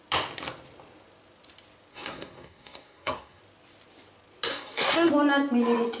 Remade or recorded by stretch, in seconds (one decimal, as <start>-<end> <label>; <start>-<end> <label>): 0.0-1.9 recorded; 1.9-3.4 remade; 3.4-4.5 recorded; 4.5-5.1 remade; 5.1-6.0 recorded